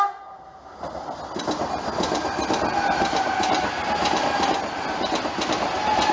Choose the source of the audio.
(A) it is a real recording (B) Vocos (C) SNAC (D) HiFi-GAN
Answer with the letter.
A